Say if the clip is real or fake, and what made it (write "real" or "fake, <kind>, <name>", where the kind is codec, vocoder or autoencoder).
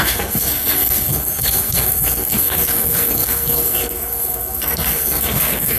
fake, codec, SNAC